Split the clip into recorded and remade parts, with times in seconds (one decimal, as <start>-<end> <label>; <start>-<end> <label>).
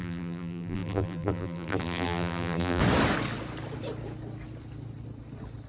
0.0-2.8 remade; 2.8-5.7 recorded